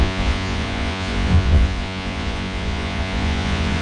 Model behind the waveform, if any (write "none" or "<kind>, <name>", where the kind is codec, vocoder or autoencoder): vocoder, Vocos